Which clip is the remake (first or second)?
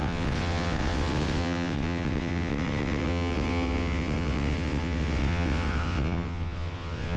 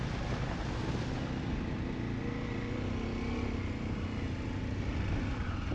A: first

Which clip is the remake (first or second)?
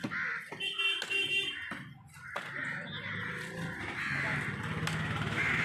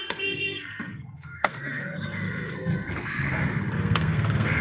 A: second